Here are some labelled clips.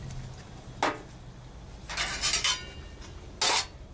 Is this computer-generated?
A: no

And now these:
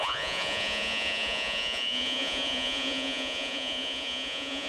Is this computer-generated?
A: yes